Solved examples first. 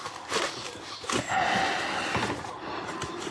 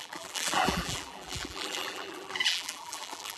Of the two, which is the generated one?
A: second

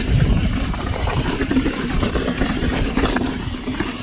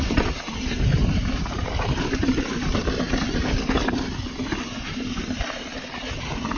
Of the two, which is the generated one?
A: first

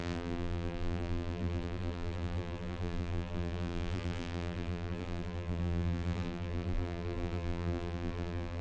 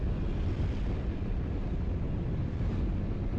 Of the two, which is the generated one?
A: first